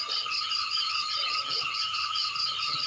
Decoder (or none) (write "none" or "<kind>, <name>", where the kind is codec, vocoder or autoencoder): vocoder, HiFi-GAN